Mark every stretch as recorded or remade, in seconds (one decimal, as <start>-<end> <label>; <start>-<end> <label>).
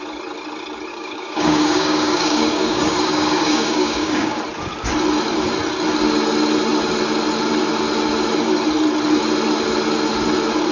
0.0-0.9 recorded; 0.9-4.4 remade; 4.4-10.7 recorded